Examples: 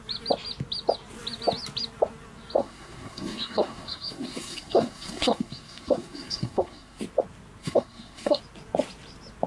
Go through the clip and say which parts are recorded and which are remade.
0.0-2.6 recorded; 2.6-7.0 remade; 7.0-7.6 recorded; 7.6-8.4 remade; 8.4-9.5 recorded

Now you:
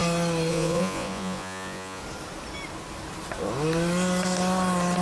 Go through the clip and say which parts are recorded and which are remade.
0.0-0.5 recorded; 0.5-2.0 remade; 2.0-5.0 recorded

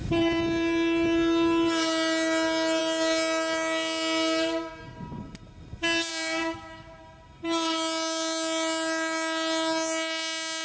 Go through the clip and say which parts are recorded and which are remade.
0.0-6.1 recorded; 6.1-7.0 remade; 7.0-10.6 recorded